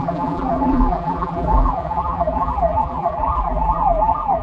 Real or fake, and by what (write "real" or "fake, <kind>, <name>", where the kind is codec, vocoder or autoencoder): fake, vocoder, BigVGAN v2